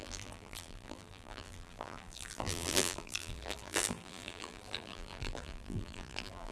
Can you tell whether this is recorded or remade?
remade